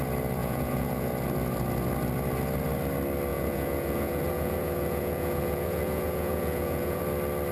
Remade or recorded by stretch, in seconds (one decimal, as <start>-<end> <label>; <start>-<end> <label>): 0.0-0.4 recorded; 0.4-1.1 remade; 1.1-3.3 recorded; 3.3-7.0 remade; 7.0-7.5 recorded